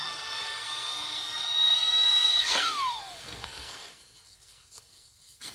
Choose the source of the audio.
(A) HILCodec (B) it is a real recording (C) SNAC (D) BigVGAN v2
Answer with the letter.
C